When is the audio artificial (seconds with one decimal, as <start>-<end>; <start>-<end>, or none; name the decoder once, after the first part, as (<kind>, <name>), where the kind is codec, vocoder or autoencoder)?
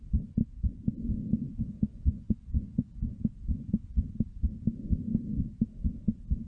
1.4-3.1 (vocoder, Vocos); 3.5-4.1